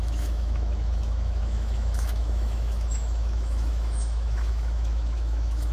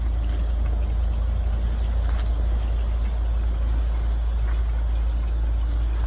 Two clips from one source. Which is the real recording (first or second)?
second